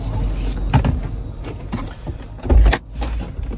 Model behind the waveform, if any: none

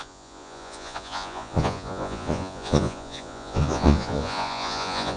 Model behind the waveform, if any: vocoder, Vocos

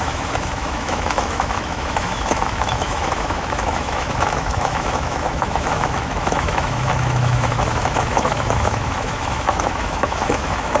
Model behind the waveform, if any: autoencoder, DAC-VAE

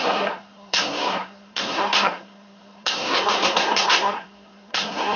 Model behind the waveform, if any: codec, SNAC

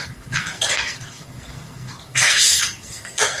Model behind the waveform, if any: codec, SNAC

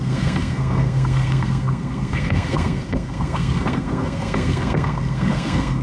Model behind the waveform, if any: codec, SNAC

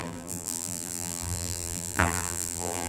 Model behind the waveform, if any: vocoder, BigVGAN v2